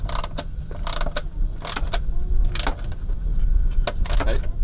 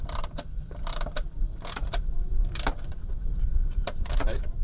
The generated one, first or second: second